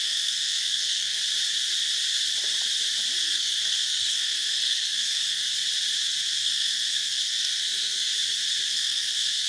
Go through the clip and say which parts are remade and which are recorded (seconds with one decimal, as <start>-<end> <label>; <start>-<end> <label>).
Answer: 0.0-1.2 remade; 1.2-3.2 recorded; 3.2-5.5 remade; 5.5-6.3 recorded; 6.3-8.1 remade; 8.1-8.7 recorded; 8.7-9.5 remade